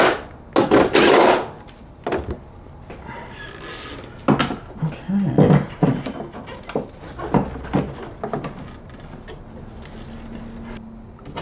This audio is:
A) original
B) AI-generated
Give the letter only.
A